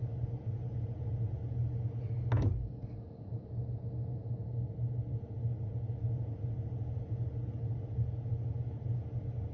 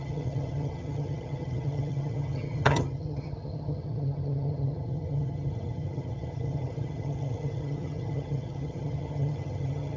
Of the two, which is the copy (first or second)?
second